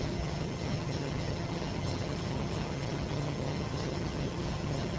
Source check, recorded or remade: remade